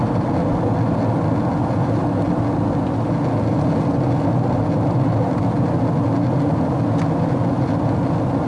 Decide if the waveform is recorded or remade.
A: recorded